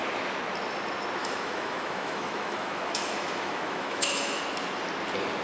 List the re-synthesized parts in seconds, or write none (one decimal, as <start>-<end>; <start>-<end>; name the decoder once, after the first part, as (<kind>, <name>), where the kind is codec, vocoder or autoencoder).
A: 1.2-4.4 (autoencoder, DAC-VAE)